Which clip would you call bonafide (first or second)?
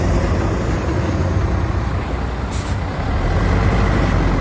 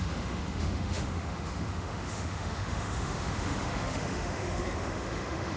first